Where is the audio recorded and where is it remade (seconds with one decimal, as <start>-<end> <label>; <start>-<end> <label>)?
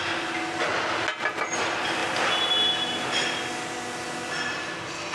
0.0-5.1 recorded